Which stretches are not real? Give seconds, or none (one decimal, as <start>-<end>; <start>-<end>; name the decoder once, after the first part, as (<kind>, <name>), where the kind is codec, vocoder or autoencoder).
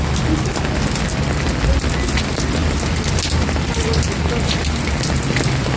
none